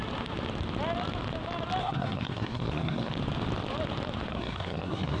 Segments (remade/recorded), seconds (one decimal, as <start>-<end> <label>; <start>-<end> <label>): 0.0-1.8 recorded; 1.8-3.1 remade; 3.1-4.3 recorded; 4.3-5.2 remade